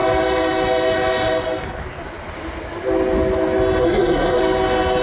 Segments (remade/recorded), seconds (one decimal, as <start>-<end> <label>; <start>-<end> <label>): 0.0-3.8 recorded; 3.8-4.4 remade; 4.4-5.0 recorded